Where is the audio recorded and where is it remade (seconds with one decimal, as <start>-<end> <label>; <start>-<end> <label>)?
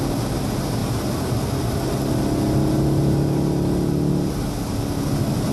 0.0-5.5 recorded